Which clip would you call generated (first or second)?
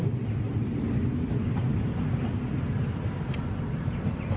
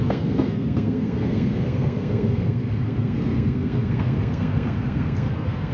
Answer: second